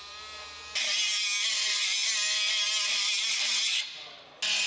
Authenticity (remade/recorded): recorded